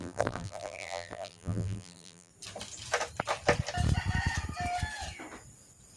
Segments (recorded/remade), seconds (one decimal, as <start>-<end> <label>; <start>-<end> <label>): 0.0-2.3 remade; 2.3-6.0 recorded